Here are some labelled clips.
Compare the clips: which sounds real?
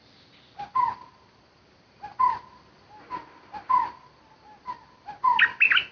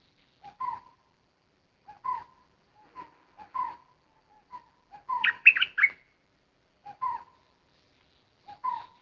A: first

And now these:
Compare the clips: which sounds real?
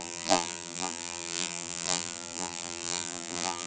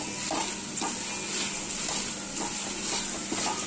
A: second